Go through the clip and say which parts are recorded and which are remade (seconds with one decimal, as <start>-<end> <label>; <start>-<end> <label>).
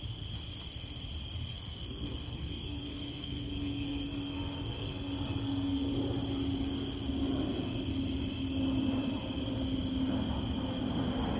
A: 0.0-1.5 recorded; 1.5-5.9 remade; 5.9-11.4 recorded